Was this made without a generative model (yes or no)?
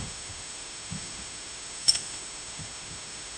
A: no